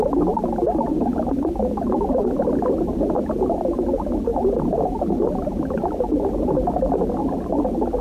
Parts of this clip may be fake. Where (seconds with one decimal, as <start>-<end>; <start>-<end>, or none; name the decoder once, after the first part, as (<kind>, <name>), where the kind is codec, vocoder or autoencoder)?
1.1-3.2 (vocoder, BigVGAN v2)